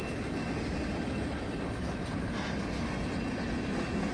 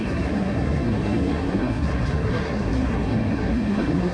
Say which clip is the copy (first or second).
second